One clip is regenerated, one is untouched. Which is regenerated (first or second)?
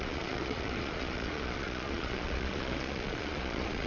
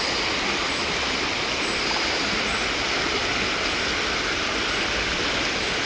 first